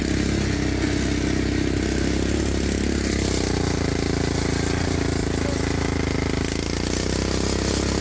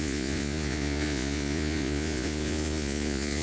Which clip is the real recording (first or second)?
first